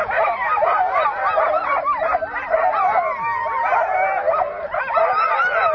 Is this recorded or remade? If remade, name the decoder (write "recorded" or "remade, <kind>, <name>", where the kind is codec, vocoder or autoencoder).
recorded